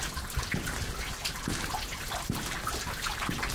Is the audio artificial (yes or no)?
no